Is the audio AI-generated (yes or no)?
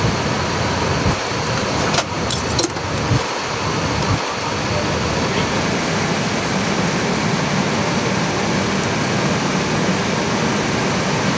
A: no